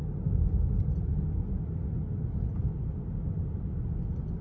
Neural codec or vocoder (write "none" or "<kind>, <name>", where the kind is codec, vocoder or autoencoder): none